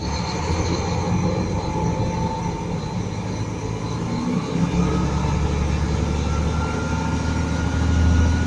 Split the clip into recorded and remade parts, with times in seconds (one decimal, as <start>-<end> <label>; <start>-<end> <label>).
0.0-8.5 recorded